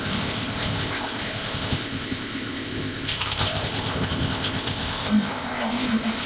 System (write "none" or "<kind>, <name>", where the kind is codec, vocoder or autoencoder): codec, ZipCodec